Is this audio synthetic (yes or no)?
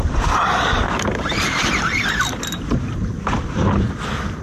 yes